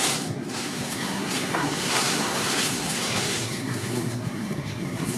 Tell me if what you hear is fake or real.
fake